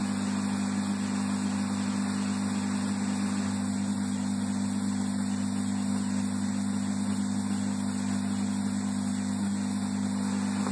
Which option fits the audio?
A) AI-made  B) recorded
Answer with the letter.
B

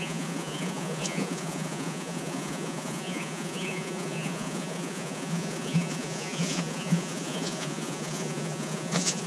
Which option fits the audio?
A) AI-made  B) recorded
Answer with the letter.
A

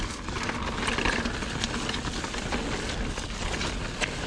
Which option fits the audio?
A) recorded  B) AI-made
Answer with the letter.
A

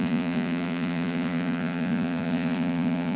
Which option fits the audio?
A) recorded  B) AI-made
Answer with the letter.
B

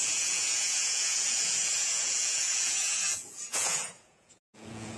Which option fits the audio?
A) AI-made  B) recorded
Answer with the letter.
A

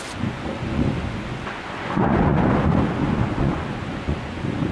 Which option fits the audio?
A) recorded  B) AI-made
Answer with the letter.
B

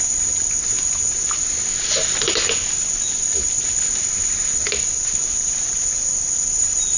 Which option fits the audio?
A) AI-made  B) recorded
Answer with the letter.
B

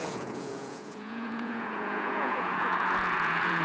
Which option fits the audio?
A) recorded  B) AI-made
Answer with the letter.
B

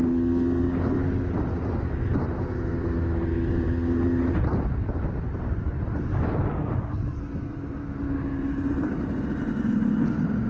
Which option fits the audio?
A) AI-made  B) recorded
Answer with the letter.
B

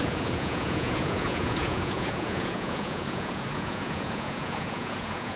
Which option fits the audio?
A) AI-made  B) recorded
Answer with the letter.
A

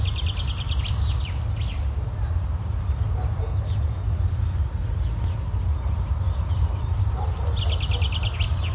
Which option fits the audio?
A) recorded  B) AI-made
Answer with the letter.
A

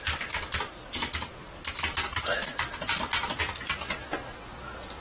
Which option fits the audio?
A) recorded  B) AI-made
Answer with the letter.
A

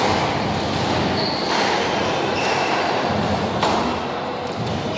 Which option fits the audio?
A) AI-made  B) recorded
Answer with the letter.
B